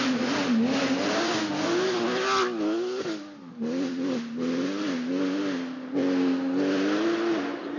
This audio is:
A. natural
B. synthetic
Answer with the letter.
A